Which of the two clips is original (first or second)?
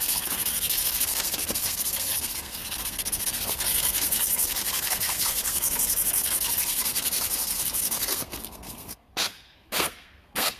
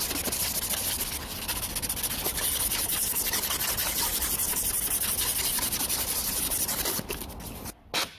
second